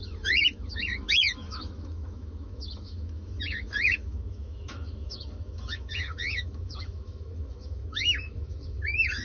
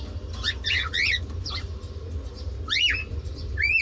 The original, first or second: second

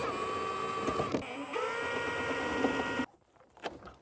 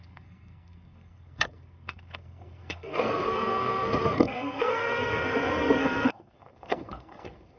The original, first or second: first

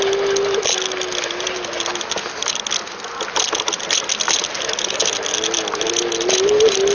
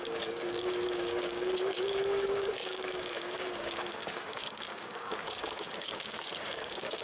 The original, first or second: first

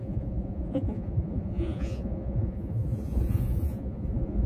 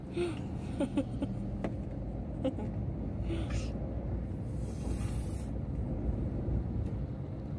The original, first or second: second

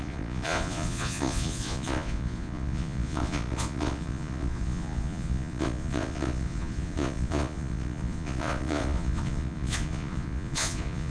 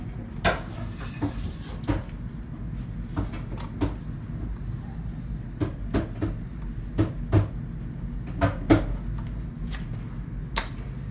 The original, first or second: second